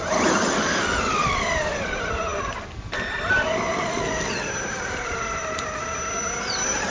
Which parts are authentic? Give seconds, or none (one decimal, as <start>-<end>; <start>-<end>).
0.0-6.9